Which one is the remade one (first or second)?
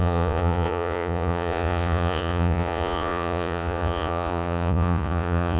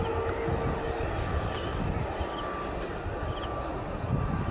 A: first